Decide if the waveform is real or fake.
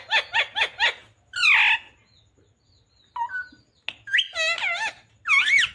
real